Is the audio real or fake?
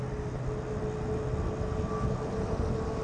real